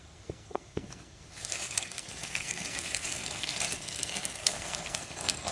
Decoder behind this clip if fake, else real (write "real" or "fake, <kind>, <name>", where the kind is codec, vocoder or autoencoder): fake, codec, SNAC